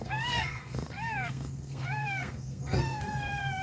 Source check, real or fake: fake